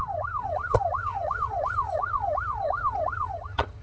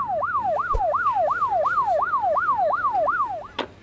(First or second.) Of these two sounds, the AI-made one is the first